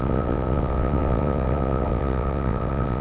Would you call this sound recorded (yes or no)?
no